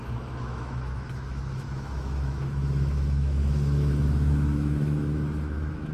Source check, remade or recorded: remade